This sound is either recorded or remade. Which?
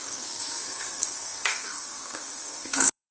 remade